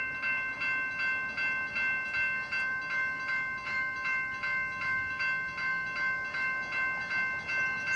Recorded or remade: recorded